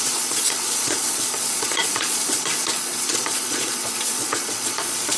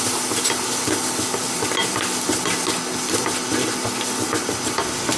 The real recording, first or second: second